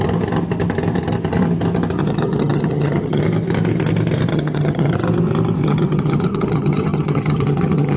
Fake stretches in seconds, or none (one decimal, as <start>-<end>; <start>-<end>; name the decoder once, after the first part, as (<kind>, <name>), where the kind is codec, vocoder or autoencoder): 2.0-3.2 (vocoder, HiFi-GAN); 4.3-4.9; 5.6-8.0

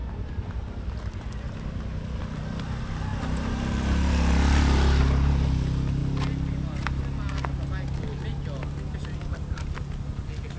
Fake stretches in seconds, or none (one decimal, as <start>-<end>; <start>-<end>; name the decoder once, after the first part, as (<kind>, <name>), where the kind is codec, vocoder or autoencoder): none